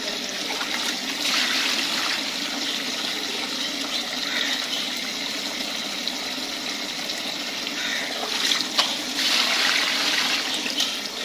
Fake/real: real